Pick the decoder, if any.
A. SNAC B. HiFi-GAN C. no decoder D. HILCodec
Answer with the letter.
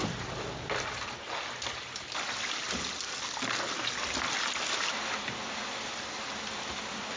C